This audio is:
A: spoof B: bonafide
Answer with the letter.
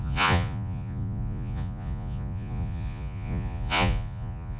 A